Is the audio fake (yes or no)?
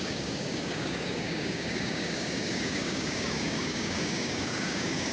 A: yes